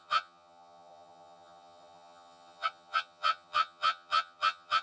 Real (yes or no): no